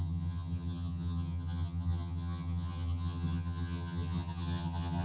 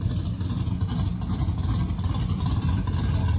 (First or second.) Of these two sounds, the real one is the second